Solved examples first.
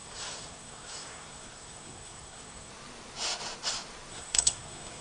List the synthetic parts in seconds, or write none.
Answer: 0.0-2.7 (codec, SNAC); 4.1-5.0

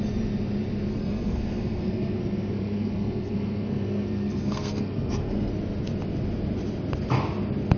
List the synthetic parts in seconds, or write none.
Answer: 0.9-5.5 (codec, SNAC)

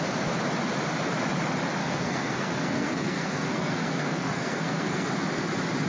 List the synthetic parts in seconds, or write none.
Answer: 1.8-5.1 (codec, SNAC)

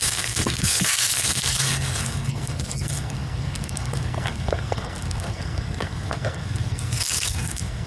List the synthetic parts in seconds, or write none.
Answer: 0.0-7.9 (codec, SNAC)